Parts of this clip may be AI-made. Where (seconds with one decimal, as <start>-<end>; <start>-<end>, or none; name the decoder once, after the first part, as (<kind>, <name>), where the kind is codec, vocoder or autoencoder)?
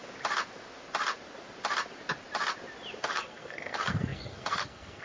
3.0-5.0 (codec, SNAC)